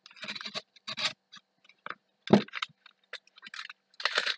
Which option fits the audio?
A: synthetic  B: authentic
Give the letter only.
B